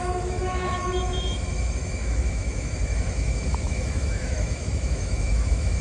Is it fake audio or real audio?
fake